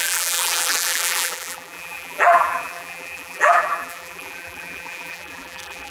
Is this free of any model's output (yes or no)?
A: no